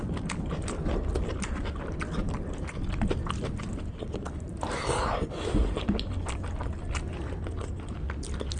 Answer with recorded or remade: recorded